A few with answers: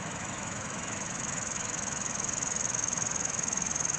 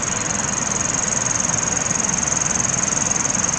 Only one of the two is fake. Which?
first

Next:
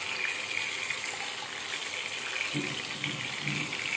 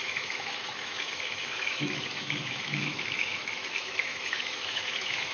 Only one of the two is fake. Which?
second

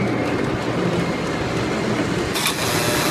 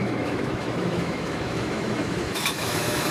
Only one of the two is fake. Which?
second